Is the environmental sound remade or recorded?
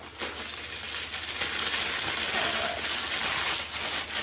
recorded